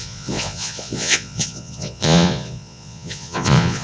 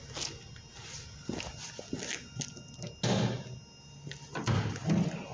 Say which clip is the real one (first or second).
second